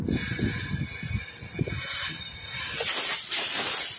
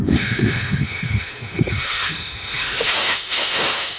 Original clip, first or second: first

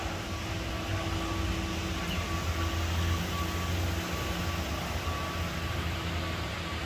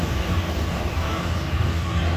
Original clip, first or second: first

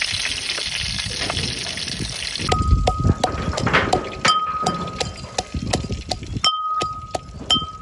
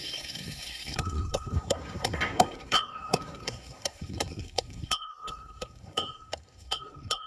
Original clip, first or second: first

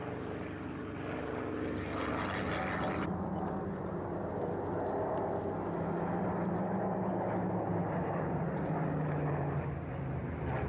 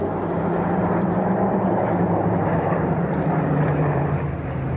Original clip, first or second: first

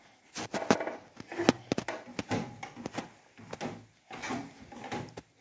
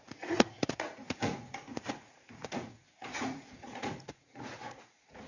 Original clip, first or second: first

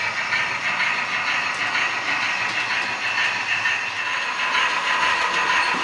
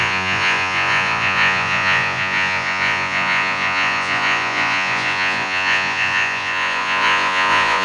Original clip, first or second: first